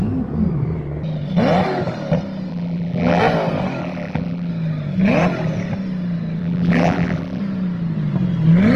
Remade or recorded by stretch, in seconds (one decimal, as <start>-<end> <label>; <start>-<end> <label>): 0.0-2.5 recorded; 2.5-3.2 remade; 3.2-3.8 recorded; 3.8-4.5 remade; 4.5-6.4 recorded; 6.4-7.4 remade; 7.4-8.8 recorded